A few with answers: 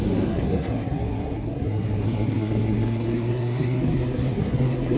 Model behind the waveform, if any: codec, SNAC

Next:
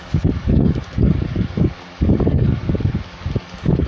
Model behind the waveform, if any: codec, DAC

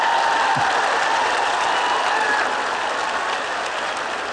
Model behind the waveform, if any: none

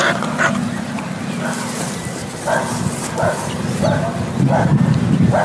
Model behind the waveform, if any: none